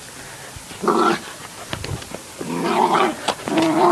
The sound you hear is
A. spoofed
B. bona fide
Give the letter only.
B